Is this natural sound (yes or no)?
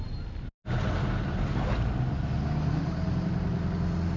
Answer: yes